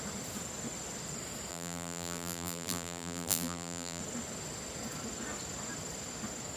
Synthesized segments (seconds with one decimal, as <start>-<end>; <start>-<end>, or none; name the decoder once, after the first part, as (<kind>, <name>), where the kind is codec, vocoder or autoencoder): 1.5-4.0 (vocoder, BigVGAN v2)